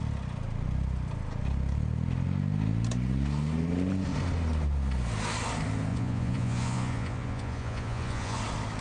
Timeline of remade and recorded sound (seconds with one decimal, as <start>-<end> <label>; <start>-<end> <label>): 0.0-5.9 recorded; 5.9-8.4 remade; 8.4-8.8 recorded